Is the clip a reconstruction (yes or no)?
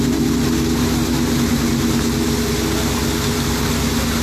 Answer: no